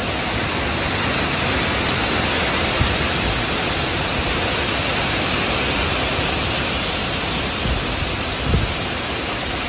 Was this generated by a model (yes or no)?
no